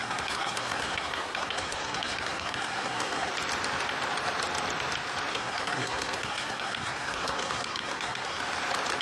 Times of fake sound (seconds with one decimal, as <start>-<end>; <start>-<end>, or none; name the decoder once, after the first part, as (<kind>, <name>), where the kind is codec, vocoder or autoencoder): 0.0-3.3 (codec, SNAC); 5.3-8.4